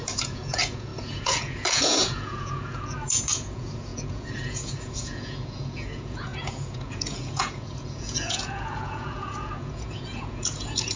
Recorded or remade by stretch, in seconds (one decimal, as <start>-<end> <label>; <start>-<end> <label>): 0.0-11.0 remade